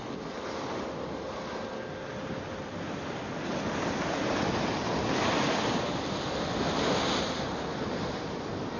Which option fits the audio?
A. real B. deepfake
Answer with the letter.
A